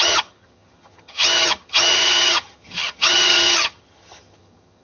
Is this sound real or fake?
fake